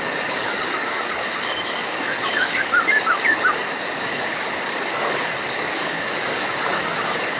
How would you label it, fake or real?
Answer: fake